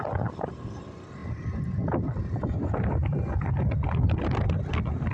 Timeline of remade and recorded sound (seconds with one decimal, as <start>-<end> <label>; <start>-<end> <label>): 0.0-5.1 recorded